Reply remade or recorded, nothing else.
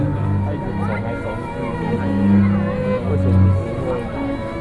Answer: recorded